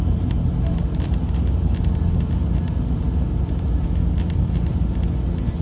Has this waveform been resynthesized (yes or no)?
no